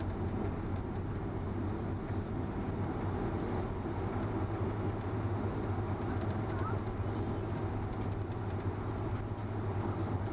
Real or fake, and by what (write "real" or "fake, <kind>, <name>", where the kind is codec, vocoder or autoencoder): real